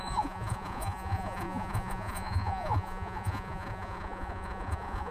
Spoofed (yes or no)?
yes